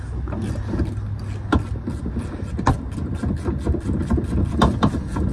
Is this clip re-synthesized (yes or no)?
no